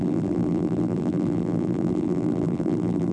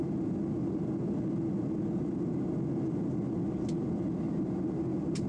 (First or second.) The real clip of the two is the second